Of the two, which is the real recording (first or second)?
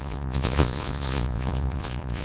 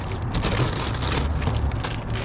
second